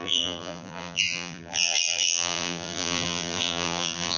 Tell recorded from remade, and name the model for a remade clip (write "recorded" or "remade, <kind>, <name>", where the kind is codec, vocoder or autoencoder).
remade, vocoder, BigVGAN v2